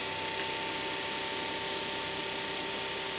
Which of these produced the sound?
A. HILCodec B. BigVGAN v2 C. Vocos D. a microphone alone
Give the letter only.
D